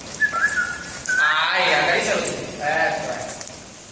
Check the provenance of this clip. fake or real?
real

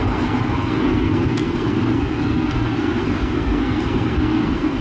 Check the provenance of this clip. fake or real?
fake